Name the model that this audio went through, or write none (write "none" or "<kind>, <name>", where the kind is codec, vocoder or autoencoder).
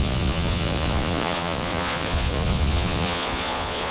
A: vocoder, Vocos